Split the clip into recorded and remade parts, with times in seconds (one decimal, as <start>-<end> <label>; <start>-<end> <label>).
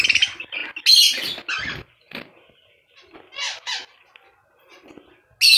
0.0-5.6 recorded